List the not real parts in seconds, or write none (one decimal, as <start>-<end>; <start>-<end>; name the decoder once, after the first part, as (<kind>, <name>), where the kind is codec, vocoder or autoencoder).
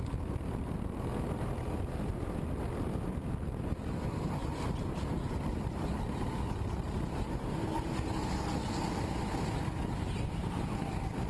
none